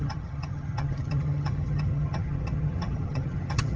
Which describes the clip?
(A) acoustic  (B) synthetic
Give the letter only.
B